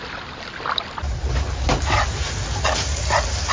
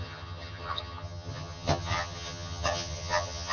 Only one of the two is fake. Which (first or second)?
second